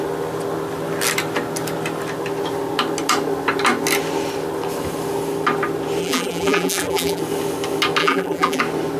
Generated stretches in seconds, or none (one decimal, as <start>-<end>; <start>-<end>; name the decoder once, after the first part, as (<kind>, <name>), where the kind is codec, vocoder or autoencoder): 6.0-7.2 (vocoder, BigVGAN v2); 8.0-8.6